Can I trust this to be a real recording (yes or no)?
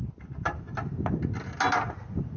yes